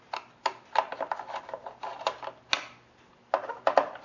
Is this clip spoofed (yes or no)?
no